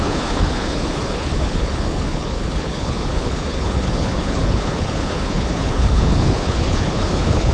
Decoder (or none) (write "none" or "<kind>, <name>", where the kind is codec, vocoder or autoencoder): codec, HILCodec